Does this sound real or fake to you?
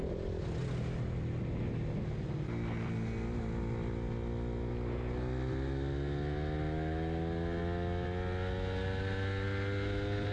real